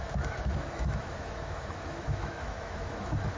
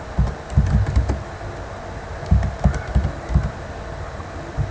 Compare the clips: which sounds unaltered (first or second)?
second